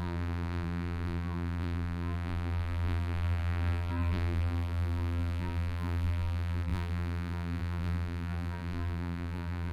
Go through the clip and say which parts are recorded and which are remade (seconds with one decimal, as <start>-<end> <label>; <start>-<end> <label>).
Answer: 0.0-9.7 remade